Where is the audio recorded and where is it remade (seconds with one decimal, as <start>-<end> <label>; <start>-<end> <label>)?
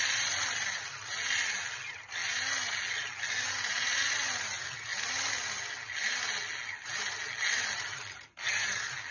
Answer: 0.0-9.1 recorded